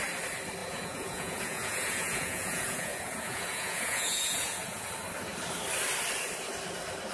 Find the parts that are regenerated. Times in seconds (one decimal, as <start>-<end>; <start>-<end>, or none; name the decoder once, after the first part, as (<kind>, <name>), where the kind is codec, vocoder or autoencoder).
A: 0.6-4.9 (vocoder, Vocos)